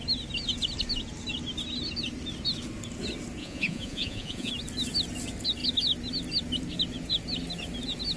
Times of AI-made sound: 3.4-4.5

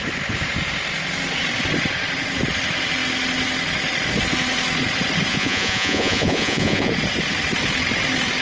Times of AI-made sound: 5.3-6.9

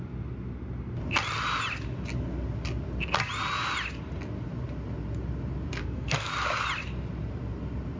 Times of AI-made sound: 5.8-6.3

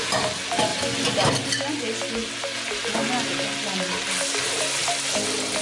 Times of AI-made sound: none

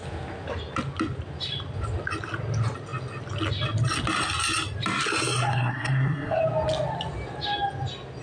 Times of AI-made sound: 5.5-6.4